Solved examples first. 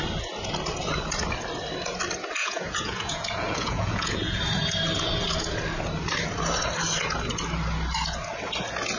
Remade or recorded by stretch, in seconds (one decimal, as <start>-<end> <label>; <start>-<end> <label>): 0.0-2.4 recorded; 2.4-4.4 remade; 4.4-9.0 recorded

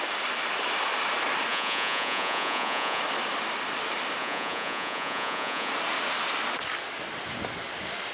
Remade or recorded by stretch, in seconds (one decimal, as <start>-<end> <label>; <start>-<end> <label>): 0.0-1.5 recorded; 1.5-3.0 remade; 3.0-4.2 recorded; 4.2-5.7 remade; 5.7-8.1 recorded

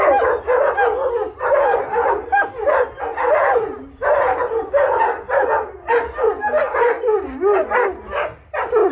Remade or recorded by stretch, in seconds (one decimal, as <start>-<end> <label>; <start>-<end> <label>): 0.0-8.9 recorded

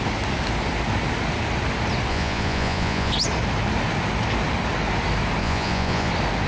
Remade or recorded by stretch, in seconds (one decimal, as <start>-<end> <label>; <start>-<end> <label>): 0.0-2.1 recorded; 2.1-3.1 remade; 3.1-5.4 recorded; 5.4-6.1 remade; 6.1-6.5 recorded